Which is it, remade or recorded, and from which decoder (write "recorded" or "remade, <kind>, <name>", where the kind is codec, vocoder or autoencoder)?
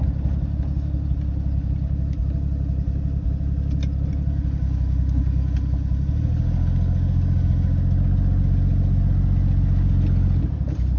recorded